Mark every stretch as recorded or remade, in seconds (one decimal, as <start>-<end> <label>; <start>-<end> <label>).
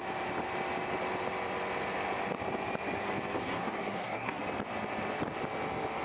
0.0-3.4 recorded; 3.4-4.4 remade; 4.4-6.0 recorded